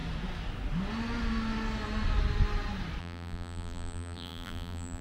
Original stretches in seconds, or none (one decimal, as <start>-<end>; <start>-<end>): 0.0-3.0